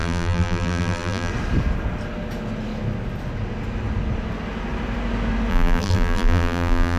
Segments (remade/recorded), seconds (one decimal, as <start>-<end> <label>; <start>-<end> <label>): 0.0-1.3 remade; 1.3-5.5 recorded; 5.5-7.0 remade